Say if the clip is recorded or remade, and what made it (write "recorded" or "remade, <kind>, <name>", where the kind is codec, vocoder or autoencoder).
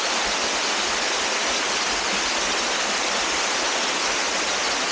recorded